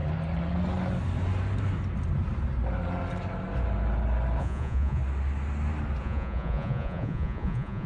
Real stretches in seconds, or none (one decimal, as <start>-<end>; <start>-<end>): 0.0-4.4; 5.0-6.0